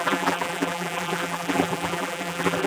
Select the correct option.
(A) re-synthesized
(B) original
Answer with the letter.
A